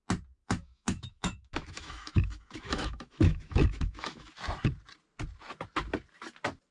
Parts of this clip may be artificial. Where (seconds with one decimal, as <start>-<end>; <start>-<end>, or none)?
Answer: 0.4-4.3